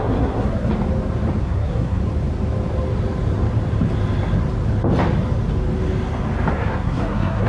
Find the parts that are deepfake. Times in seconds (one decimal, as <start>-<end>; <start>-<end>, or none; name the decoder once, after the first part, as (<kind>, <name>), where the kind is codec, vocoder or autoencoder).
0.0-0.7 (codec, SNAC); 1.4-2.0; 6.5-7.5